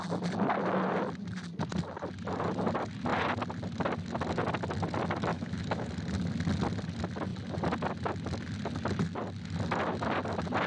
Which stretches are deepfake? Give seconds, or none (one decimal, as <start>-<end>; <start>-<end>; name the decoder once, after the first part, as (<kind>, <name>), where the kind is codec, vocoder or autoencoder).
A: 5.3-5.9 (autoencoder, DAC-VAE)